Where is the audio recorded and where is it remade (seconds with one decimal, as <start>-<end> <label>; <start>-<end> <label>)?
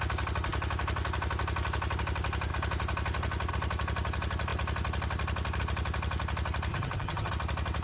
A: 0.0-6.7 recorded; 6.7-7.3 remade; 7.3-7.8 recorded